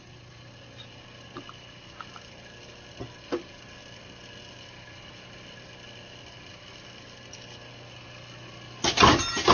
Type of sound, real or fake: real